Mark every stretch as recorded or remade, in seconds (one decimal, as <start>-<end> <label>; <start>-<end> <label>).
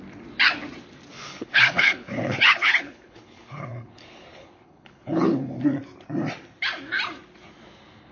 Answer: 0.0-1.1 recorded; 1.1-5.6 remade; 5.6-8.1 recorded